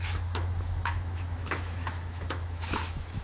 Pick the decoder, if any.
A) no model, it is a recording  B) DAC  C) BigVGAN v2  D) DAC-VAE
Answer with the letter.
D